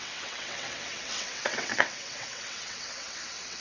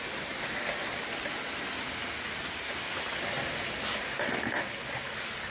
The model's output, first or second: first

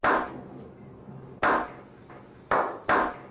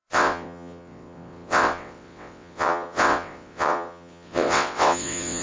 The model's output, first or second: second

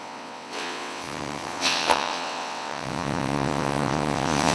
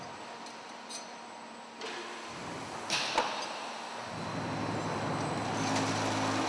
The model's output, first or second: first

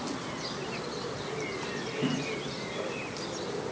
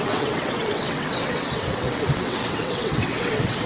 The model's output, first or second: second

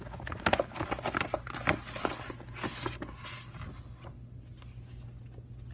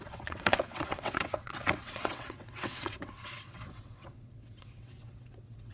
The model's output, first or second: second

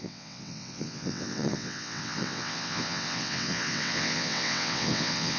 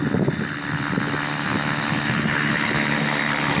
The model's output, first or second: first